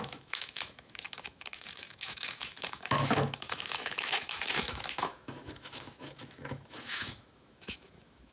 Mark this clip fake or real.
fake